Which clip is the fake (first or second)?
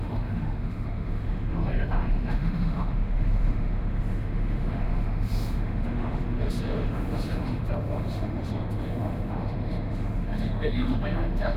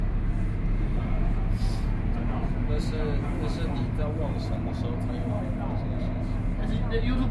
first